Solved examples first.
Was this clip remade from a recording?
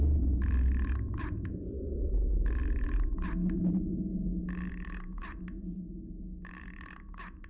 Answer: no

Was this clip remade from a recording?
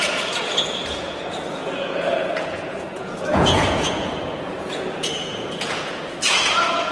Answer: yes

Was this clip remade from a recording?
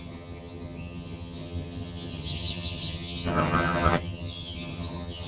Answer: yes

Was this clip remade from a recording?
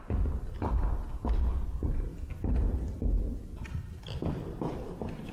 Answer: no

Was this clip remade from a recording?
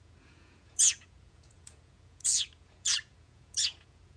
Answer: yes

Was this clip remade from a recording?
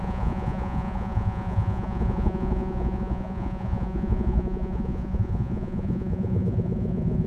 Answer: yes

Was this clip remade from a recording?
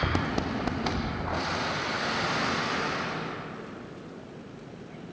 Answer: no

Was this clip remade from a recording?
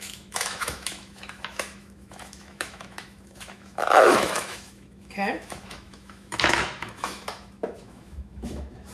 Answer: yes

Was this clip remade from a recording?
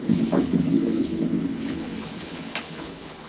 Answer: yes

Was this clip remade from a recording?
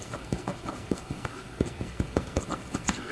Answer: yes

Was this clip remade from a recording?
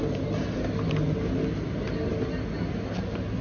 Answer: no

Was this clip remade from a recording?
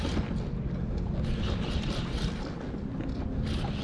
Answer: no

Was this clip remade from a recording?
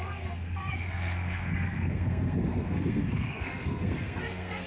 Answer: yes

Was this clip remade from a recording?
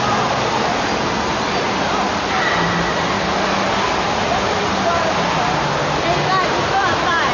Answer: no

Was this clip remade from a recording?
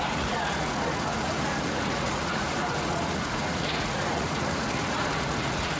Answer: yes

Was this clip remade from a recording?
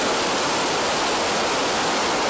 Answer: no